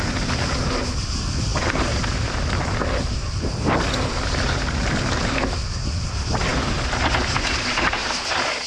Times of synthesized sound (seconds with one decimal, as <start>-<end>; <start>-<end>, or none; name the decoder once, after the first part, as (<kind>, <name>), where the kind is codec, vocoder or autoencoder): 1.5-4.4 (vocoder, BigVGAN v2)